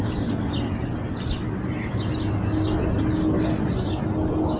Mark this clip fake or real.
real